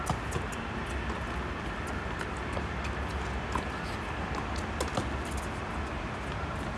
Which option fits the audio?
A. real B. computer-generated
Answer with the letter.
A